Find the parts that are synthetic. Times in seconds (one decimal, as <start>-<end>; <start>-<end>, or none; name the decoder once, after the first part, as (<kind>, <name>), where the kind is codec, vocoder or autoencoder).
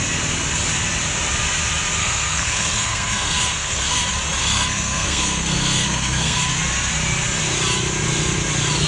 2.0-4.0 (codec, SNAC); 4.4-6.4